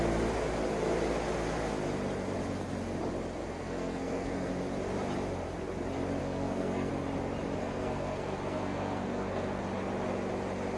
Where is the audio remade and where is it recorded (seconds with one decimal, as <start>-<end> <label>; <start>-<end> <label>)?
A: 0.0-3.4 recorded; 3.4-4.5 remade; 4.5-6.2 recorded; 6.2-6.9 remade; 6.9-7.6 recorded; 7.6-9.6 remade; 9.6-10.8 recorded